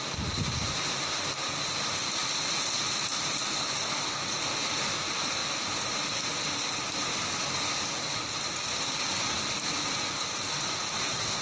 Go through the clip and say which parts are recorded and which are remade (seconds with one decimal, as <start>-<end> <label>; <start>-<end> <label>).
0.0-11.4 recorded